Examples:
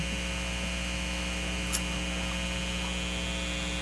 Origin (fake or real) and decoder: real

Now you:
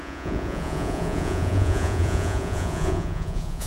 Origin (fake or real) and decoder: fake, vocoder, Vocos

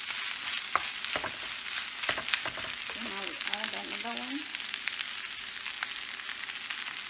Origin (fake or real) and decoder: real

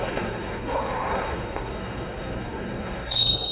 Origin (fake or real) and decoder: fake, codec, SNAC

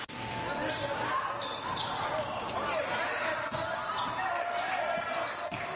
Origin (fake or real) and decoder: real